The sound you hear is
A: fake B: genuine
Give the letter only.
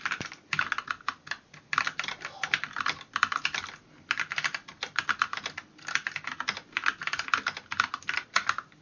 B